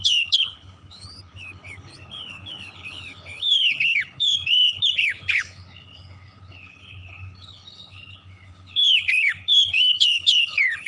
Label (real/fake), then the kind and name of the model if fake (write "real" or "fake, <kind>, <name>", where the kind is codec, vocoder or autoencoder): fake, codec, HILCodec